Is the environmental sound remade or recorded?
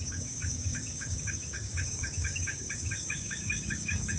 remade